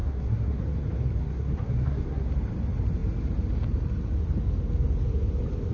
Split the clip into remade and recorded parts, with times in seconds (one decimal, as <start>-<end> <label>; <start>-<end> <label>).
0.0-0.6 remade; 0.6-1.2 recorded; 1.2-2.3 remade; 2.3-5.7 recorded